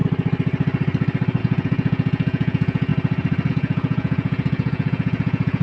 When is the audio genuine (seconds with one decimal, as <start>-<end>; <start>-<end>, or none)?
0.0-1.4; 2.9-3.5